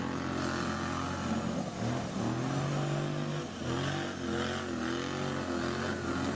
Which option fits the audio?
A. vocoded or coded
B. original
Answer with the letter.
B